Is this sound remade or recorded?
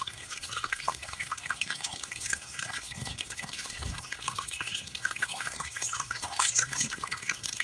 remade